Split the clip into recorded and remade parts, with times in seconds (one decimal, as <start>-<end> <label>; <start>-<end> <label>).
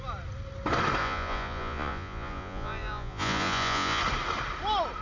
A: 0.0-1.0 recorded; 1.0-4.0 remade; 4.0-5.0 recorded